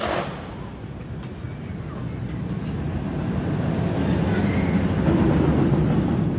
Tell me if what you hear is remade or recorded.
recorded